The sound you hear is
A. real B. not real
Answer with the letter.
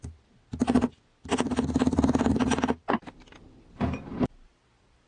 B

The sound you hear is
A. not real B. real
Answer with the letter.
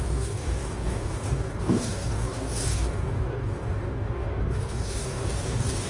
A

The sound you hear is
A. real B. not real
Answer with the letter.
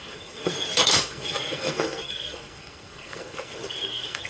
B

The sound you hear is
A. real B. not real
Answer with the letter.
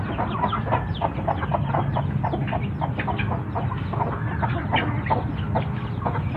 A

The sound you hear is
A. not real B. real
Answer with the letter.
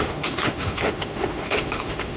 A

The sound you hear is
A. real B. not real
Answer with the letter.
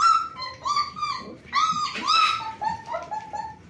A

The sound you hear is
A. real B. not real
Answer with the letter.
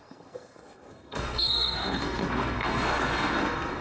B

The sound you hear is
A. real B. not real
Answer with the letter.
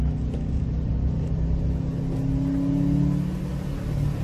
A